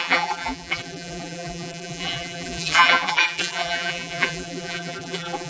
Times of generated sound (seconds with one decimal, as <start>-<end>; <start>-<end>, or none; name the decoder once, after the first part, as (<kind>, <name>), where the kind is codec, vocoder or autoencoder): 0.0-5.5 (vocoder, BigVGAN v2)